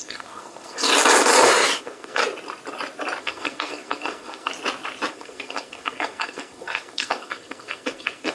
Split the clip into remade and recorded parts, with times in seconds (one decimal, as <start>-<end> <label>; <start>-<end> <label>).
0.0-0.9 remade; 0.9-1.8 recorded; 1.8-2.2 remade; 2.2-3.2 recorded; 3.2-4.5 remade; 4.5-5.1 recorded; 5.1-8.3 remade